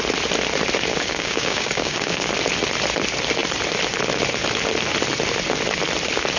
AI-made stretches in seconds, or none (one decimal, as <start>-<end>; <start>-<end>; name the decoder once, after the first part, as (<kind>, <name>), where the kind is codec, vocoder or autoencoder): 0.9-2.3 (codec, DAC)

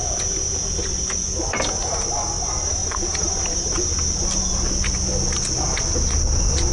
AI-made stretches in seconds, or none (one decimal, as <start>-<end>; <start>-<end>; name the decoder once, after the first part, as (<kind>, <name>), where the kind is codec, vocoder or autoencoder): none

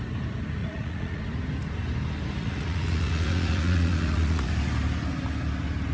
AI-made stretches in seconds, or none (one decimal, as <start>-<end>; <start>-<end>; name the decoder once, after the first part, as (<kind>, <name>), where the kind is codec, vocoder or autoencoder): 0.6-1.2 (vocoder, Vocos); 2.4-4.5

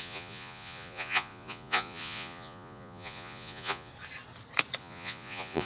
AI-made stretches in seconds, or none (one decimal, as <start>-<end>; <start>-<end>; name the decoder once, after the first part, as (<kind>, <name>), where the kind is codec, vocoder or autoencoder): 0.0-3.9 (vocoder, Vocos); 4.8-5.7

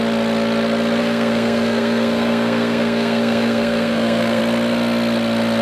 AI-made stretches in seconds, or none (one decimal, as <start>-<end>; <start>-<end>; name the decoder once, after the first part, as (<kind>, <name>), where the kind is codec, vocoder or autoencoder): 1.0-4.4 (codec, SNAC)

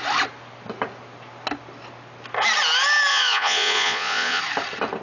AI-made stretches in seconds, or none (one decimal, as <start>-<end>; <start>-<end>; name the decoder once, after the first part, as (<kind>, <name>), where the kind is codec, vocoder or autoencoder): 3.1-4.4 (vocoder, Vocos)

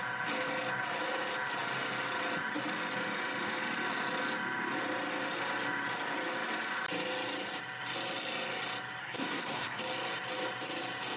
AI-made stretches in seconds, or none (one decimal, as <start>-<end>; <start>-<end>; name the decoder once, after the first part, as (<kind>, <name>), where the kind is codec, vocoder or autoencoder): 9.0-9.8 (codec, SNAC)